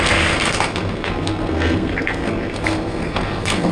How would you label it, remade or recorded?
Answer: remade